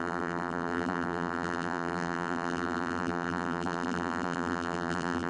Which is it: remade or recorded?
remade